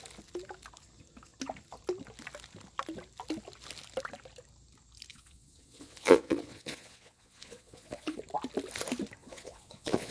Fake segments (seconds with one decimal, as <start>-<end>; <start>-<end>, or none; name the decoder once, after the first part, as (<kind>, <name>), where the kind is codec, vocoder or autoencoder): 5.1-8.2 (vocoder, Vocos); 9.2-10.1